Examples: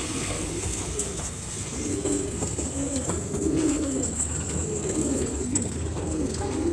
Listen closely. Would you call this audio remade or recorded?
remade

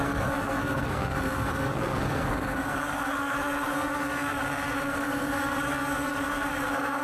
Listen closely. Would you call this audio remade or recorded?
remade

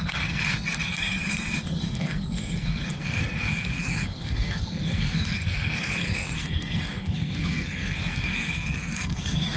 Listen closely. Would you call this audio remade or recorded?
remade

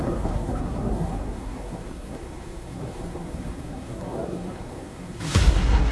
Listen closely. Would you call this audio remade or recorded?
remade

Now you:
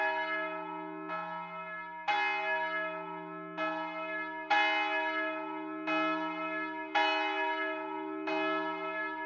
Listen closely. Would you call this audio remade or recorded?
recorded